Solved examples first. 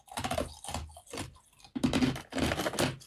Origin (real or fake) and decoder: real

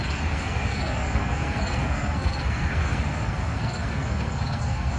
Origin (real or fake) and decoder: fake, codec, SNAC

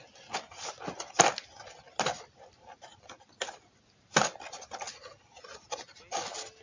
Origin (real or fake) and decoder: real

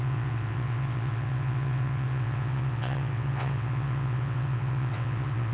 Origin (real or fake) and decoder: fake, vocoder, WaveNeXt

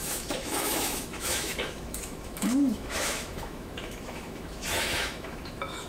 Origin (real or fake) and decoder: fake, autoencoder, DAC-VAE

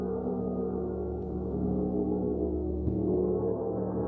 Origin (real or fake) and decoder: fake, codec, SNAC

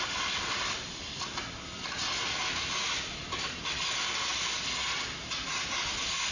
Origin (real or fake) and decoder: real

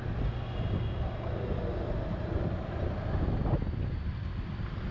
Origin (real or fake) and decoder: real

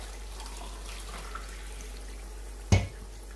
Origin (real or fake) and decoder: real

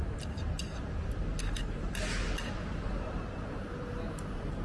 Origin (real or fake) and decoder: real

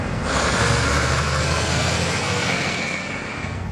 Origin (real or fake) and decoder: fake, codec, SNAC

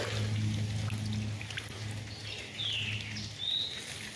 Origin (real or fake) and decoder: real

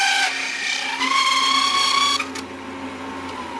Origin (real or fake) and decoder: real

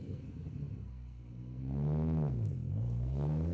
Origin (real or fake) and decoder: fake, codec, SNAC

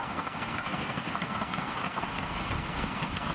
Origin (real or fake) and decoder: fake, codec, SNAC